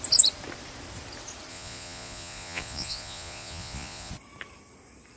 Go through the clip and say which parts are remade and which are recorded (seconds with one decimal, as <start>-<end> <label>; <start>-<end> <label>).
0.0-1.5 recorded; 1.5-4.1 remade; 4.1-5.2 recorded